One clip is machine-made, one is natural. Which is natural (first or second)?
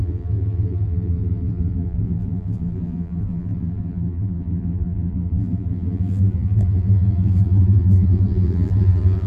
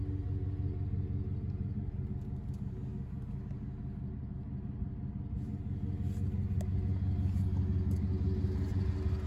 second